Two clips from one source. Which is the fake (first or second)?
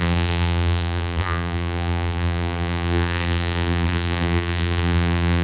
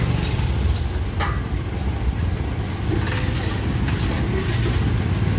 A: first